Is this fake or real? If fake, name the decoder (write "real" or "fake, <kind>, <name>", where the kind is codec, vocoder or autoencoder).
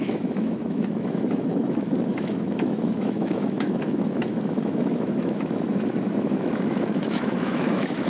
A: fake, autoencoder, DAC-VAE